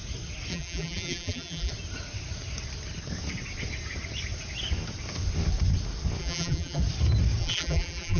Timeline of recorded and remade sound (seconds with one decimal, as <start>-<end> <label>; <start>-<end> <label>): 0.0-0.5 recorded; 0.5-1.7 remade; 1.7-6.2 recorded; 6.2-6.8 remade; 6.8-7.4 recorded; 7.4-8.2 remade